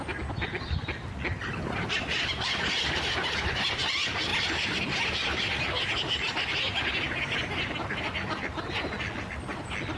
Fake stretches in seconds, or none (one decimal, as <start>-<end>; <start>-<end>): none